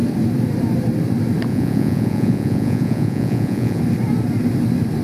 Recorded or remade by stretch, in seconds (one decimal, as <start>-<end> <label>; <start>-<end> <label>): 0.0-1.5 recorded; 1.5-3.8 remade; 3.8-5.0 recorded